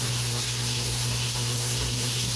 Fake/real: fake